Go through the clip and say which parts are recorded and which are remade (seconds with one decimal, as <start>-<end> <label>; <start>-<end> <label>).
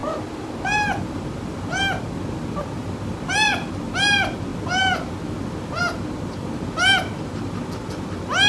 0.0-8.5 remade